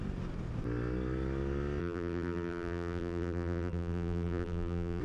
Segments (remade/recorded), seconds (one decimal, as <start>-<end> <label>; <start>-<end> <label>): 0.0-1.8 recorded; 1.8-5.0 remade